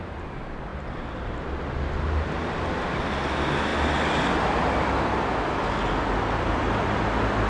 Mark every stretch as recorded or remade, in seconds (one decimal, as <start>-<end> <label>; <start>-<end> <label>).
0.0-7.5 recorded